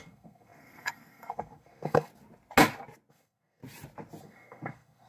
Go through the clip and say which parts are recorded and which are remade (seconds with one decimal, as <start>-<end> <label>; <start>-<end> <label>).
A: 0.0-2.1 remade; 2.1-3.1 recorded; 3.1-3.6 remade; 3.6-4.2 recorded; 4.2-5.1 remade